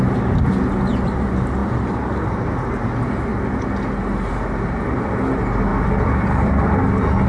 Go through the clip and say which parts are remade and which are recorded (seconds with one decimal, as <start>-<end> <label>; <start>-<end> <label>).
0.0-5.7 recorded; 5.7-6.7 remade; 6.7-7.3 recorded